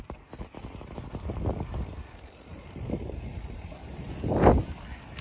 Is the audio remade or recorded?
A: recorded